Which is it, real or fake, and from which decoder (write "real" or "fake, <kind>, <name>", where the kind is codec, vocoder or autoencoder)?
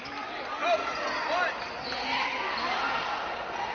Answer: real